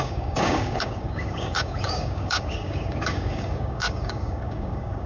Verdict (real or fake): fake